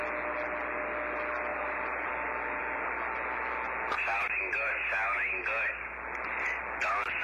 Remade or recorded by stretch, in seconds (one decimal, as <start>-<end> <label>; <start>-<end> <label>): 0.0-1.5 recorded; 1.5-2.1 remade; 2.1-7.2 recorded